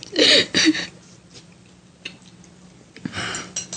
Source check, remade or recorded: recorded